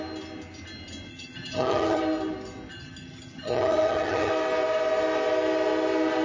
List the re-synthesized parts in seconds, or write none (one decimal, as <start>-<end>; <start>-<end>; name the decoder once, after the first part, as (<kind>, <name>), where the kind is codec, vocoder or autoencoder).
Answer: 1.1-2.0 (vocoder, HiFi-GAN); 2.7-4.3